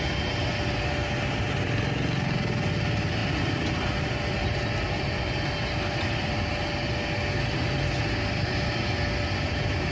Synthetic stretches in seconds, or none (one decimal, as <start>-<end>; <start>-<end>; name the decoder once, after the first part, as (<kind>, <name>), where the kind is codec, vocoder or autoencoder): none